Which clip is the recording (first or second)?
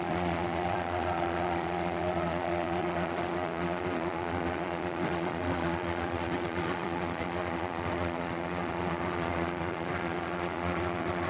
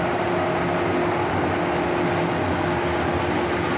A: second